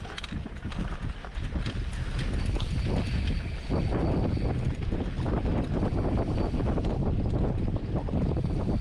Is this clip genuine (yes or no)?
yes